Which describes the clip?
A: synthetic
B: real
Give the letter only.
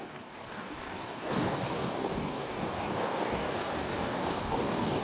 A